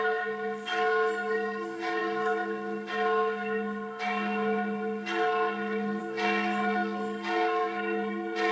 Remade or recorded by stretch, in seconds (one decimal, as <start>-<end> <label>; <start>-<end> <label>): 0.0-8.5 remade